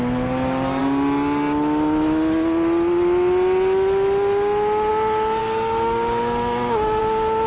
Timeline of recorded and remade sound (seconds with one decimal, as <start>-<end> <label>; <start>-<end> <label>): 0.0-5.4 recorded; 5.4-7.0 remade; 7.0-7.5 recorded